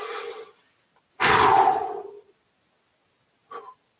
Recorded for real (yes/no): yes